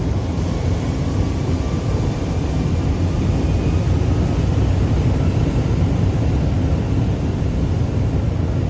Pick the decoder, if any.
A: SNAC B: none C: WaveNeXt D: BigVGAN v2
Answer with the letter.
B